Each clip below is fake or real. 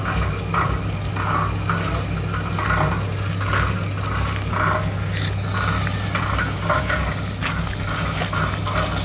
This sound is real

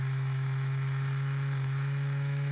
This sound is fake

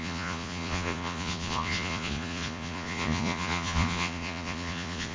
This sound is fake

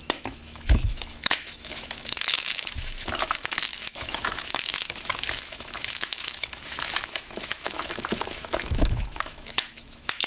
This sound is fake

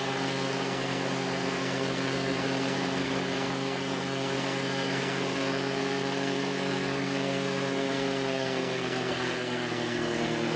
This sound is fake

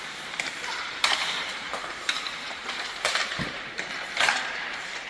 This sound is fake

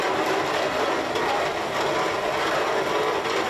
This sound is real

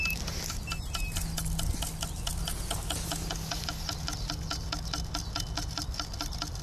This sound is real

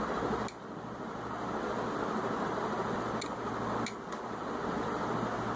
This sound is real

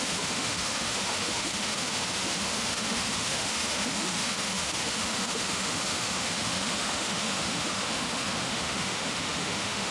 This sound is fake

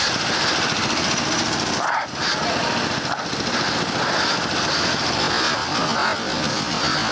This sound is real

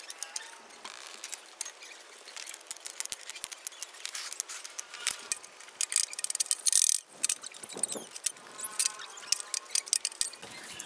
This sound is real